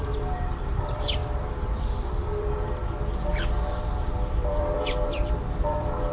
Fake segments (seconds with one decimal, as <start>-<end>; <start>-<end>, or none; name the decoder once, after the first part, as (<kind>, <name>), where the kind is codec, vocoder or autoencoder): 0.0-6.1 (vocoder, BigVGAN v2)